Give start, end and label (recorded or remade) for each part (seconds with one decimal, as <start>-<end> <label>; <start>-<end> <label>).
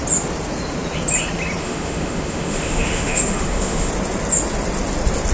0.0-1.6 recorded; 1.6-3.9 remade; 3.9-5.3 recorded